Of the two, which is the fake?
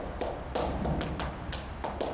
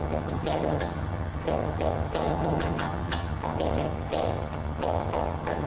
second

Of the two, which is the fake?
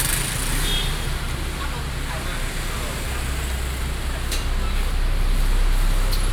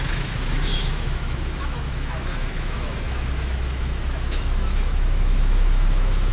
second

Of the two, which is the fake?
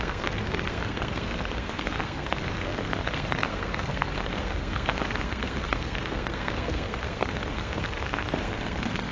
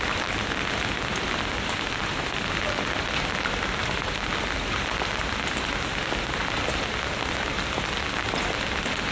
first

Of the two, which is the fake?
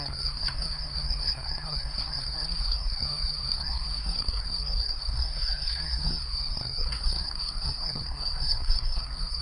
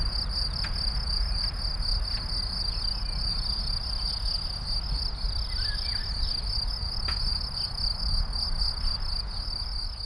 first